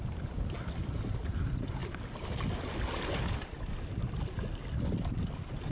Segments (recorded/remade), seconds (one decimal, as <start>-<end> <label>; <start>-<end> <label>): 0.0-5.7 recorded